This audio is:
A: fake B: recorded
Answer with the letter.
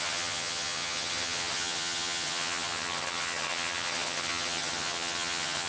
A